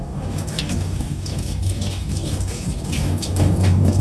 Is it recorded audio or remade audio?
remade